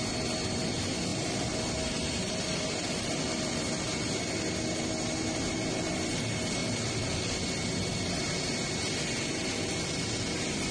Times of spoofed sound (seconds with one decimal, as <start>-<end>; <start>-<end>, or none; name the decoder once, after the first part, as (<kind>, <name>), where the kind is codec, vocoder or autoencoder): 1.1-3.6 (vocoder, BigVGAN v2); 6.6-8.2